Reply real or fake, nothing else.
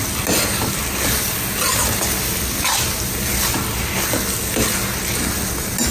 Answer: real